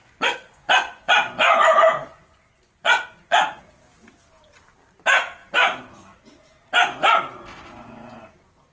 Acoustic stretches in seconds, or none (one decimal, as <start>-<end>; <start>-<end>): 3.6-8.7